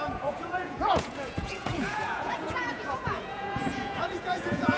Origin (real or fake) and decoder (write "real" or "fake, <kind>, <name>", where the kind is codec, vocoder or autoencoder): fake, vocoder, Vocos